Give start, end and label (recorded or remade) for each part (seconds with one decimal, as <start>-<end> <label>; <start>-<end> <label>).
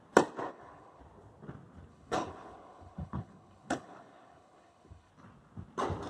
0.0-0.5 recorded; 0.5-1.0 remade; 1.0-1.9 recorded; 1.9-5.1 remade; 5.1-6.1 recorded